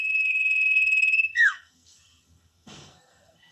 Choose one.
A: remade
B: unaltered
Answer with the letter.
A